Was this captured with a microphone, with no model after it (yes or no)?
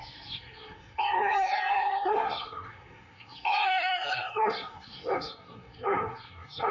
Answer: no